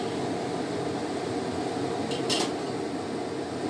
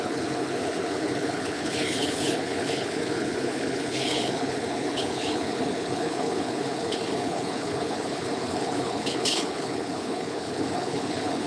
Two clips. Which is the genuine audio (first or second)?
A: first